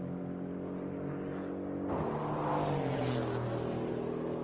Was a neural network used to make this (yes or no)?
no